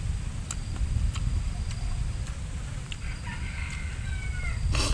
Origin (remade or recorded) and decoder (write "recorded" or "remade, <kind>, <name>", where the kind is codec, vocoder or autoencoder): recorded